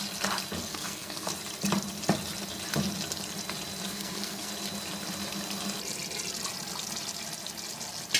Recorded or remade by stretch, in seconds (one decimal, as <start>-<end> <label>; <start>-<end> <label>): 0.0-0.7 recorded; 0.7-1.3 remade; 1.3-3.9 recorded; 3.9-4.5 remade; 4.5-8.2 recorded